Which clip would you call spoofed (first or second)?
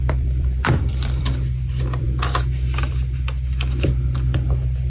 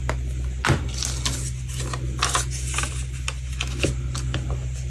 first